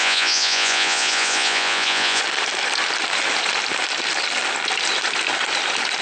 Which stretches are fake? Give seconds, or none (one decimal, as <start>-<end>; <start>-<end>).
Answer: 0.0-2.2